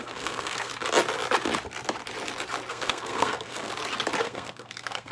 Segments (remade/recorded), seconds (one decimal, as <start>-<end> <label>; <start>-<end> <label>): 0.0-0.7 remade; 0.7-2.7 recorded; 2.7-3.7 remade; 3.7-4.2 recorded; 4.2-5.1 remade